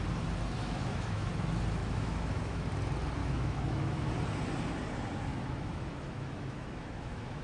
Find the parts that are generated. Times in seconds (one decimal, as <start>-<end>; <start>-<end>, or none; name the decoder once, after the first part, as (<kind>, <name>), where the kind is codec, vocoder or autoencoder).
0.6-1.3 (autoencoder, DAC-VAE); 1.8-2.7; 3.2-4.1; 5.3-7.4